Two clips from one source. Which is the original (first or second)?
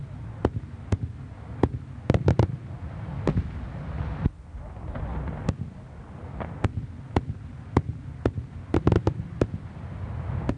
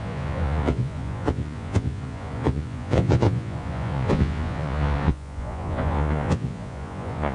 first